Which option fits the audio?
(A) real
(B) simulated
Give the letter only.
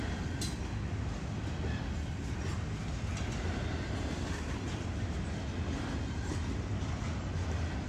A